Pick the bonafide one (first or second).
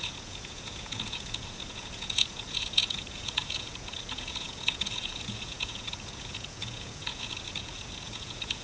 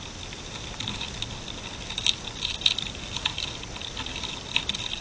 second